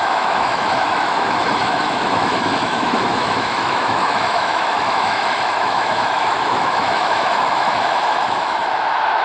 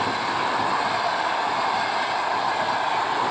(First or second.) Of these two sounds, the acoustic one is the second